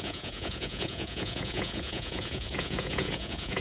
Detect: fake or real fake